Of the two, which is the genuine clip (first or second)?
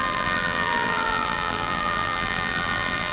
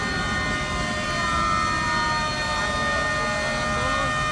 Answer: second